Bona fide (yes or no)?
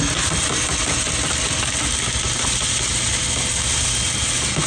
yes